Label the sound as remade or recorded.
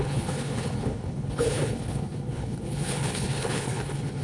remade